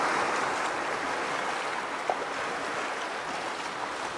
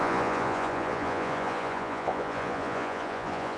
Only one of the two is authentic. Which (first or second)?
first